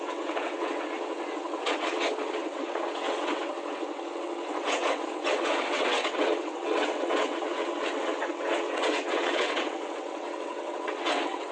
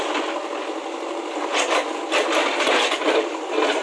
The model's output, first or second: first